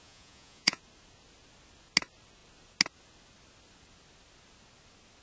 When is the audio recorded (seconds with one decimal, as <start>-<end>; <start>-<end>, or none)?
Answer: 0.8-5.2